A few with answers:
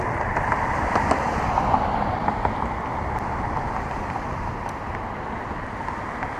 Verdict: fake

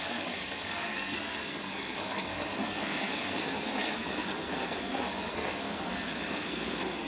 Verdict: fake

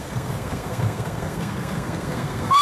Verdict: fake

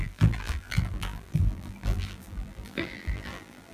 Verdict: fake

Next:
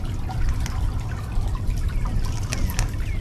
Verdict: real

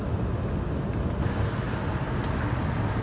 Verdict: real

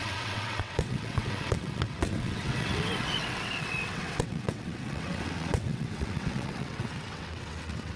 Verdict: fake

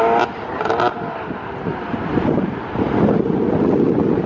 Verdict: real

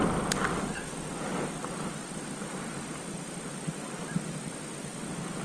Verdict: real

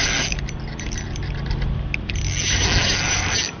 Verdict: real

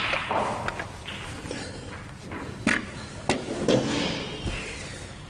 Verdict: real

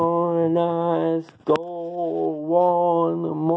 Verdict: real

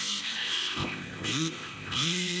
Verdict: fake